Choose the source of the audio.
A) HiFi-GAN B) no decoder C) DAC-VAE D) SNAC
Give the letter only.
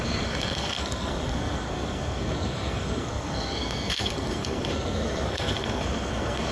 D